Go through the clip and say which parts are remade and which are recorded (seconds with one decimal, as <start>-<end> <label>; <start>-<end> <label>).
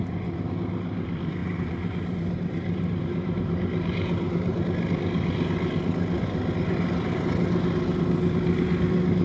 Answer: 0.0-1.4 recorded; 1.4-4.6 remade; 4.6-9.2 recorded